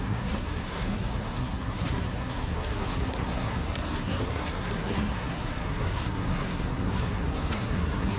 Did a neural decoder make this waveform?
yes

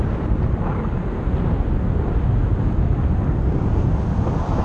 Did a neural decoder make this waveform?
no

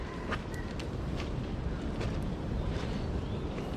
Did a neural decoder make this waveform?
no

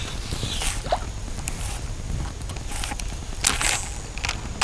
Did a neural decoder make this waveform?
no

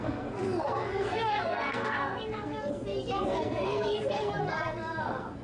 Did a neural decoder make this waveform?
yes